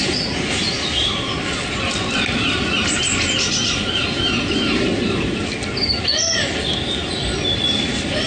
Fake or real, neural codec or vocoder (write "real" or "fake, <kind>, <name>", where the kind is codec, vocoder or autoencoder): real